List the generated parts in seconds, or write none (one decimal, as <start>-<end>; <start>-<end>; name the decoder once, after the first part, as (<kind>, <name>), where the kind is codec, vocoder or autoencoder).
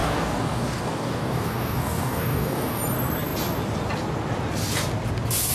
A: 0.0-2.8 (codec, DAC)